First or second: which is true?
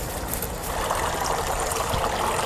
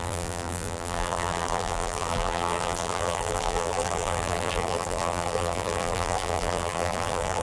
first